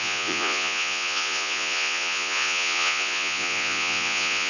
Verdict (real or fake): fake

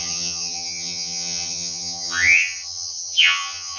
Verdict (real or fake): fake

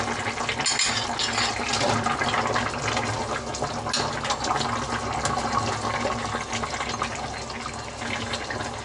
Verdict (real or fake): real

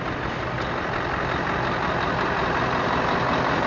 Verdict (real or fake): real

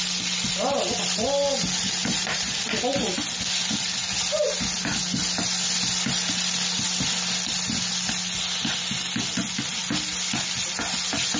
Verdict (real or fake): real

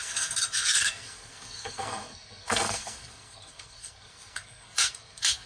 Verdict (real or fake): fake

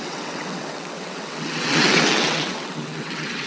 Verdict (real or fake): fake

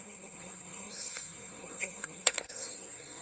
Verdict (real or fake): fake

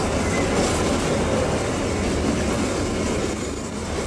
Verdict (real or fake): real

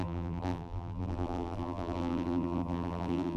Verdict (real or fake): fake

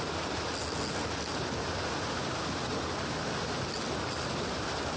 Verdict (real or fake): real